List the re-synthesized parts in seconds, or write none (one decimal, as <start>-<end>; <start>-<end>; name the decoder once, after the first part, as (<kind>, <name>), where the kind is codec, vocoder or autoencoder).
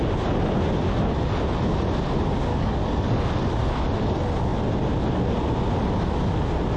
2.5-3.2 (codec, DAC)